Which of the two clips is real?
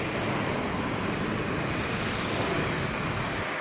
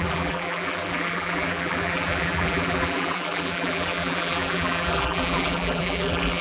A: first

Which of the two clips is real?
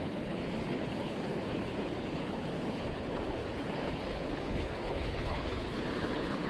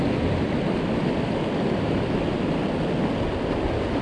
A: second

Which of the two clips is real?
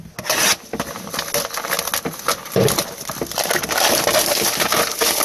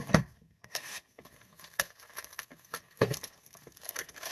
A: first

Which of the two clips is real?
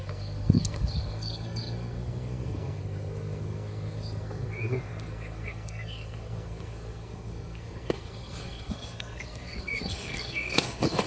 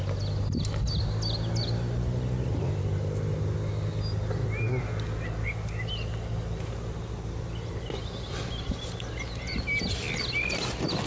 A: second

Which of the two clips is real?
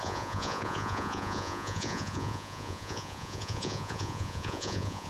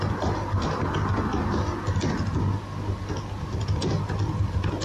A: second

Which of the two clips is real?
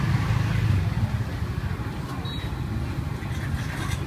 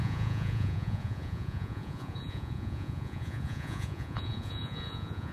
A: first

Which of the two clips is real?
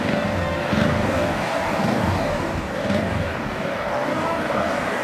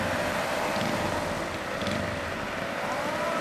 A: second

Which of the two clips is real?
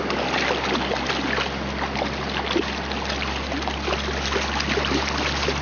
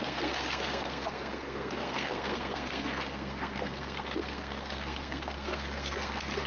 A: first